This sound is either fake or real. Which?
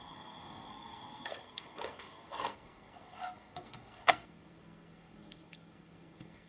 fake